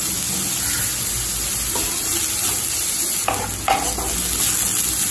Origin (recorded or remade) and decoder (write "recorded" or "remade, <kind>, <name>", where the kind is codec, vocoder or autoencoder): recorded